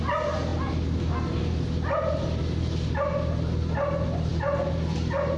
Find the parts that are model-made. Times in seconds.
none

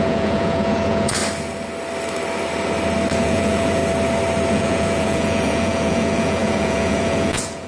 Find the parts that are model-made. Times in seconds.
0.0-1.2 (vocoder, Vocos); 3.2-3.8; 4.5-7.7

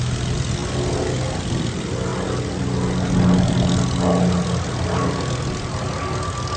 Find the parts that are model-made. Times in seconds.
none

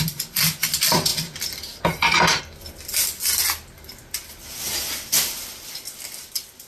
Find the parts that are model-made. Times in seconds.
none

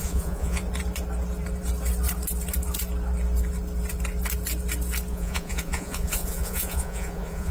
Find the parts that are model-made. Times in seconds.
0.0-0.6 (vocoder, Vocos); 5.1-7.5

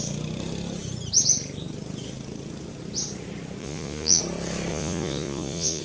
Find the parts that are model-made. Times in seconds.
3.6-4.2 (vocoder, Vocos); 4.7-5.8

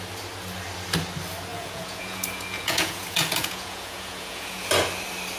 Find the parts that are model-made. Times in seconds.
1.5-4.7 (vocoder, Vocos)